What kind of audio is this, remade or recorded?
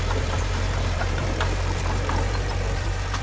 remade